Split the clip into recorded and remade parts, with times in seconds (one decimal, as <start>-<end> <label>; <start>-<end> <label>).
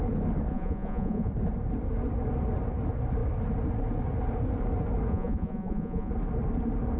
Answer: 0.0-0.5 recorded; 0.5-1.3 remade; 1.3-5.1 recorded; 5.1-6.1 remade; 6.1-7.0 recorded